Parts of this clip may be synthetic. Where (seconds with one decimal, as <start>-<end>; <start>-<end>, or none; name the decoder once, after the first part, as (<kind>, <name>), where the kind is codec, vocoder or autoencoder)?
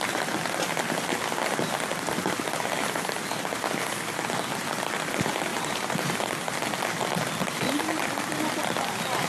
5.5-6.3 (vocoder, BigVGAN v2)